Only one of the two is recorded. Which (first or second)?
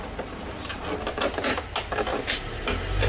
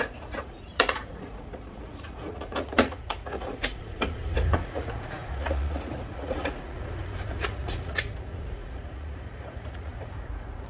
first